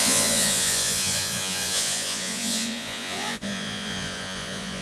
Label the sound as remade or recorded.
remade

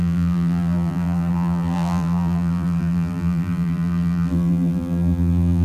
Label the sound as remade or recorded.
remade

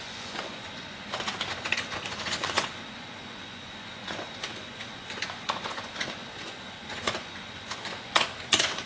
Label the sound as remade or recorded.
remade